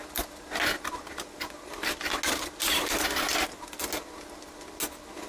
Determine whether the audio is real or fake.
real